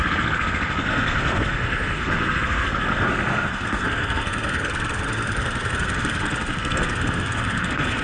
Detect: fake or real fake